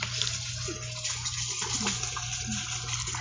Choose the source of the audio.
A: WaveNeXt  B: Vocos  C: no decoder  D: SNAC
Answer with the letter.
C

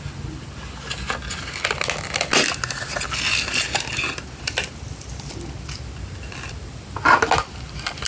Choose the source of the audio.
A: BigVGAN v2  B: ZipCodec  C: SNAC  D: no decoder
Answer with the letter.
D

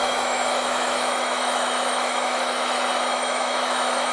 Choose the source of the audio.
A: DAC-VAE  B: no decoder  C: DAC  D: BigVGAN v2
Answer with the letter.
A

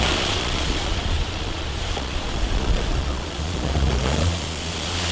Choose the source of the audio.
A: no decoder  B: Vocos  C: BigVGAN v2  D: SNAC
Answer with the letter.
B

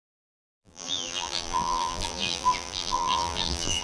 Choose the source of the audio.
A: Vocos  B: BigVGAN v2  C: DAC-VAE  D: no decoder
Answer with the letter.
B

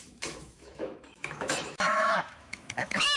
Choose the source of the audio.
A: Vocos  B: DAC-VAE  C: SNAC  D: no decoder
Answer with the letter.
B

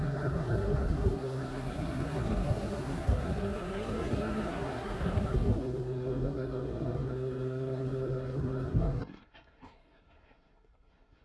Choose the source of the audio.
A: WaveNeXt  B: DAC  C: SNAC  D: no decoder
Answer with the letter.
C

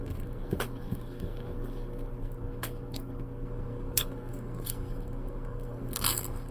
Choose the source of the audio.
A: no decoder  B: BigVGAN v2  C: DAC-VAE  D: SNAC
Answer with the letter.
D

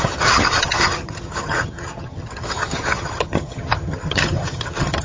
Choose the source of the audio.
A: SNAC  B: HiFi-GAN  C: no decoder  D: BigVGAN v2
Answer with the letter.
B